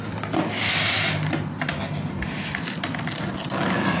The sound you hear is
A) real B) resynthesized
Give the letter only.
A